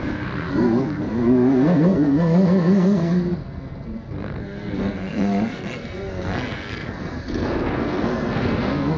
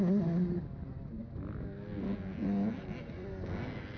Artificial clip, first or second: first